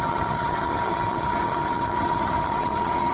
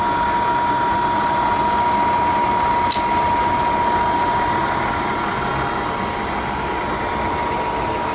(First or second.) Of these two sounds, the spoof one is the first